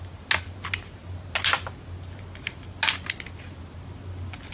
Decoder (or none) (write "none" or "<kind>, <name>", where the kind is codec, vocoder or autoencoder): none